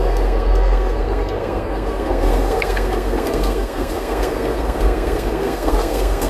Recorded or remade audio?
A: remade